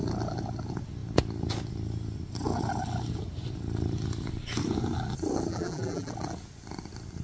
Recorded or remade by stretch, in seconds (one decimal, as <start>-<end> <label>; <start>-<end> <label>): 0.0-5.5 recorded; 5.5-6.1 remade; 6.1-7.2 recorded